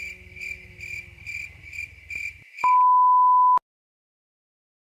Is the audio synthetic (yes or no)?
no